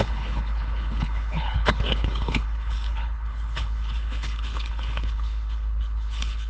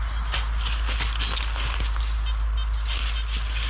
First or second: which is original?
second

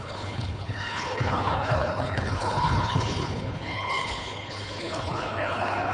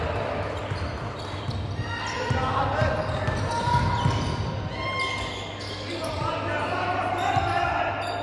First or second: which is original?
second